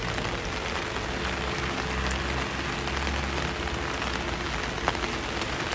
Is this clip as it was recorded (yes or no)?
yes